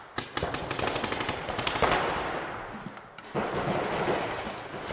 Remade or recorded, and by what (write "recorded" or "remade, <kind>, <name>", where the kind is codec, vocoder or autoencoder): recorded